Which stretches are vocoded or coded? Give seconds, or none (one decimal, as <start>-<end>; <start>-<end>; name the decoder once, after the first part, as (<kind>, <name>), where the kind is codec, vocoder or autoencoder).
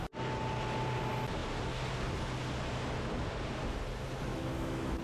4.3-5.0 (autoencoder, DAC-VAE)